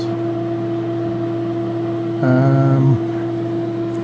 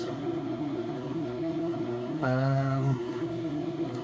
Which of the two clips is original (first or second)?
first